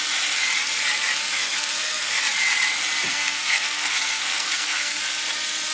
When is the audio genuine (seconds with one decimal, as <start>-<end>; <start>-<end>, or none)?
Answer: 0.0-1.4; 2.2-3.1; 5.0-5.7